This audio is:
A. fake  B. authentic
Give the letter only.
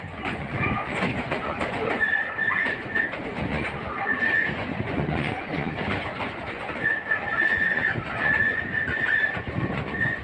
A